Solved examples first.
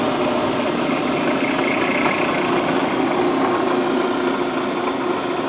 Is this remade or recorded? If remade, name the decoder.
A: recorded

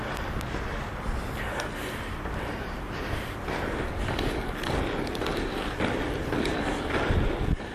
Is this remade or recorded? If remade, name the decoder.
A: recorded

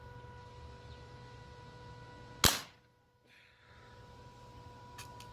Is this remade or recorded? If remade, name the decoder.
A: recorded